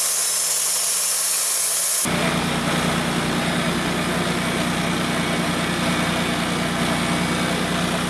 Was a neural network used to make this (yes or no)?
no